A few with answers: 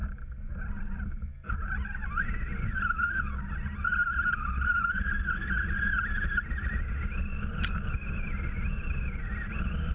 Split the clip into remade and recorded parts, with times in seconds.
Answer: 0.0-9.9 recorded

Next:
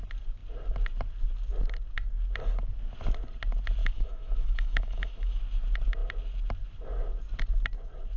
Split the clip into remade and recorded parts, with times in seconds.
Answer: 0.0-3.8 recorded; 3.8-5.4 remade; 5.4-8.2 recorded

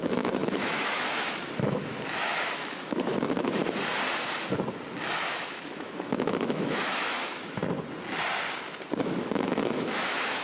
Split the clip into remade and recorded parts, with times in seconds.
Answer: 0.0-3.6 remade; 3.6-5.4 recorded; 5.4-7.6 remade; 7.6-9.0 recorded; 9.0-10.4 remade

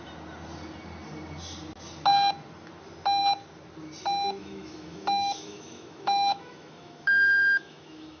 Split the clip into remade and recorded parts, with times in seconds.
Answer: 0.0-4.4 recorded; 4.4-8.2 remade

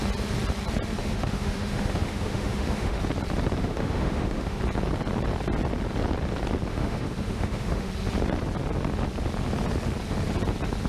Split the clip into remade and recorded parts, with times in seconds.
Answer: 0.0-1.0 recorded; 1.0-3.0 remade; 3.0-3.6 recorded; 3.6-4.6 remade; 4.6-6.7 recorded; 6.7-7.9 remade; 7.9-10.9 recorded

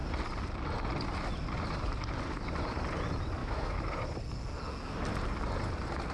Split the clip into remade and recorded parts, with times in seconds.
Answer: 0.0-3.4 recorded; 3.4-3.9 remade; 3.9-6.1 recorded